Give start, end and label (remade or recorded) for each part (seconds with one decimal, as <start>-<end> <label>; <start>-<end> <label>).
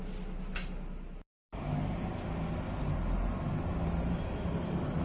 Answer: 0.0-5.0 recorded